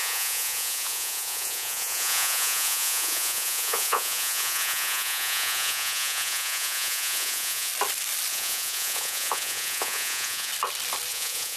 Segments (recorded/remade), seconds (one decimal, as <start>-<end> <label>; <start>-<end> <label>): 0.0-7.7 remade; 7.7-8.3 recorded; 8.3-10.5 remade; 10.5-11.1 recorded; 11.1-11.6 remade